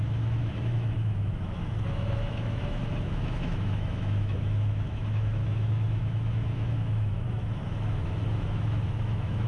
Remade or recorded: remade